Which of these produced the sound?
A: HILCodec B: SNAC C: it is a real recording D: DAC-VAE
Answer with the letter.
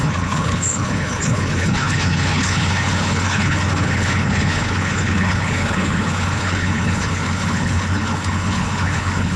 A